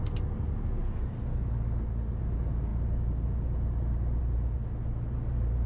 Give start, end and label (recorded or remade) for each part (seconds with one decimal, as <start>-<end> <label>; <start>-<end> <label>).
0.0-5.7 recorded